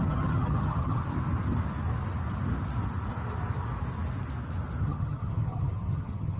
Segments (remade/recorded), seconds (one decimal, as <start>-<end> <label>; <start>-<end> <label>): 0.0-1.0 remade; 1.0-4.8 recorded; 4.8-6.4 remade